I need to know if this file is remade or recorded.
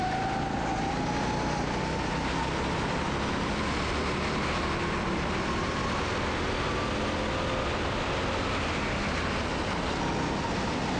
recorded